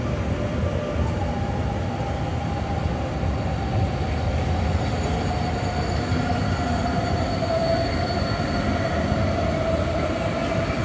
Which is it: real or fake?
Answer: real